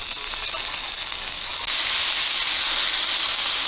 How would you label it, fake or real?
real